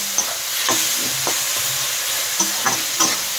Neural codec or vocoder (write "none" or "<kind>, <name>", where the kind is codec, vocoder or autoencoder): none